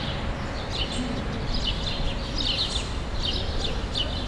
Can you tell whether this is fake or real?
real